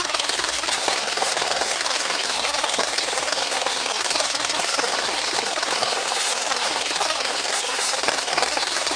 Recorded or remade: remade